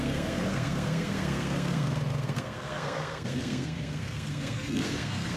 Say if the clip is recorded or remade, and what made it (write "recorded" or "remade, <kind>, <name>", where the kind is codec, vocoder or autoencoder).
remade, codec, SNAC